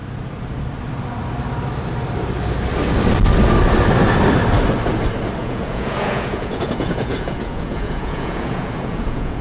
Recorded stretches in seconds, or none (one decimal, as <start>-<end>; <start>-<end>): 0.0-5.4